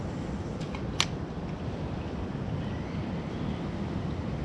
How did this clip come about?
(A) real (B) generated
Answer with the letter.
A